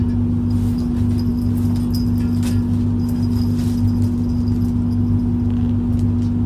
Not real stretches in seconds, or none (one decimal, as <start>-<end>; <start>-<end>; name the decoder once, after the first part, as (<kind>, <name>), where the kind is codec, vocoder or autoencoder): none